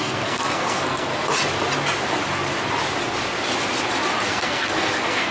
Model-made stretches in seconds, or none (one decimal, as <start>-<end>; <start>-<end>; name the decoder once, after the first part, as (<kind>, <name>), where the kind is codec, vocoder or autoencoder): 0.0-1.1 (codec, SNAC); 4.3-5.3